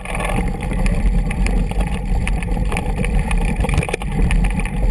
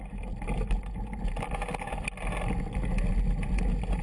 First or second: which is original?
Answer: second